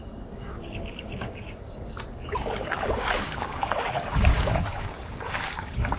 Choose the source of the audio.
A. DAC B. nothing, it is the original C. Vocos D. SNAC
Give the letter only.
A